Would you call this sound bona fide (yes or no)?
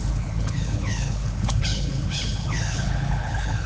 no